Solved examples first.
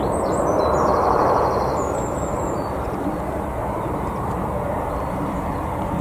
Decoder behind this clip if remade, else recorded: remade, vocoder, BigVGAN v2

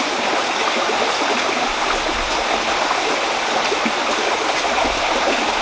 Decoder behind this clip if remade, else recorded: recorded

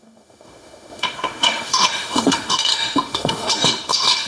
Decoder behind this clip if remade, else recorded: remade, autoencoder, DAC-VAE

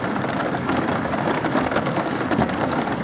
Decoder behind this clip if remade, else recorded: remade, codec, DAC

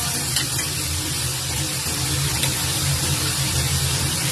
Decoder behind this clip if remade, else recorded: remade, vocoder, BigVGAN v2